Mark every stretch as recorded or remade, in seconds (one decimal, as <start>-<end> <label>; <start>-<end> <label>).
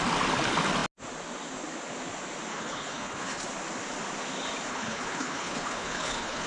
0.0-2.5 recorded; 2.5-3.4 remade; 3.4-4.7 recorded; 4.7-6.5 remade